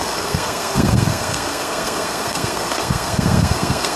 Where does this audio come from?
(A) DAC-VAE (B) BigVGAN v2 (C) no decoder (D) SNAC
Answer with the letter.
D